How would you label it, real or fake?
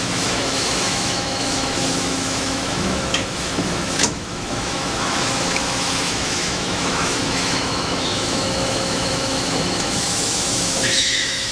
fake